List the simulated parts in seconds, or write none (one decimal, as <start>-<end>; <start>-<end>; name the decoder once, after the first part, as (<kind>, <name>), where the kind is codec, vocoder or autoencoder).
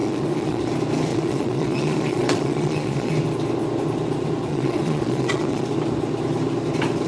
0.0-0.7 (vocoder, Vocos); 1.1-3.1; 4.5-5.7